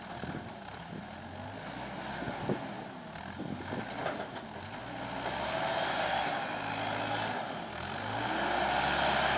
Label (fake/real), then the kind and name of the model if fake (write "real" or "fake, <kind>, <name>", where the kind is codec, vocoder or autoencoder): real